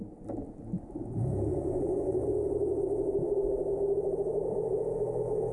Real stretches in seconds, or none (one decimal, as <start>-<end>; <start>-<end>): 0.0-1.5; 2.2-5.5